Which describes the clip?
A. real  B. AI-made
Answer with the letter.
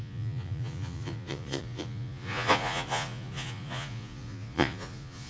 B